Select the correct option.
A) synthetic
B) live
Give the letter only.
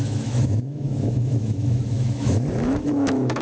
A